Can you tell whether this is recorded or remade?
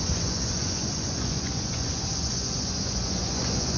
remade